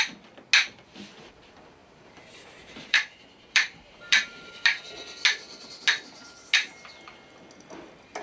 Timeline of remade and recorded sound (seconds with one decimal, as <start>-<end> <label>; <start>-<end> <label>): 0.0-1.8 recorded; 1.8-4.5 remade; 4.5-8.2 recorded